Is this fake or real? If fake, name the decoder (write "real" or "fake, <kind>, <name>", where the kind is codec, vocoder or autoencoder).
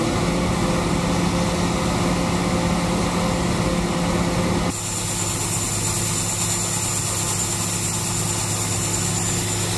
real